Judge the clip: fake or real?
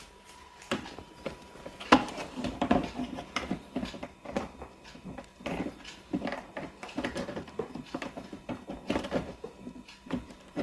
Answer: fake